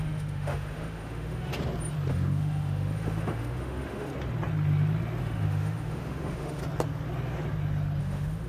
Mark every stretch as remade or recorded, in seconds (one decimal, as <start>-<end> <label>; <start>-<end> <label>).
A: 0.0-1.5 remade; 1.5-2.1 recorded; 2.1-4.1 remade; 4.1-5.2 recorded; 5.2-6.6 remade; 6.6-8.0 recorded; 8.0-8.5 remade

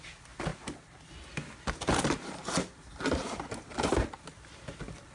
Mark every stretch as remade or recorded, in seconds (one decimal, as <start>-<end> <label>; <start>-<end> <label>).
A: 0.0-5.1 recorded

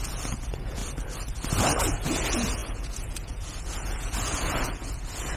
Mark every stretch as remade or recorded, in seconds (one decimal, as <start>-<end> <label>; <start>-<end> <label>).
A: 0.0-0.8 remade; 0.8-1.8 recorded; 1.8-5.4 remade

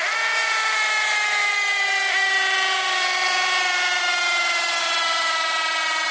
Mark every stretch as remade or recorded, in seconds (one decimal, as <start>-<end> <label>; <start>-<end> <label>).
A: 0.0-1.4 recorded; 1.4-4.0 remade; 4.0-4.8 recorded; 4.8-6.1 remade

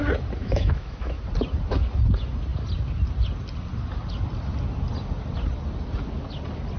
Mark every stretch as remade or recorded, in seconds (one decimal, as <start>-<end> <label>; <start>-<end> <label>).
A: 0.0-0.4 recorded; 0.4-1.2 remade; 1.2-6.8 recorded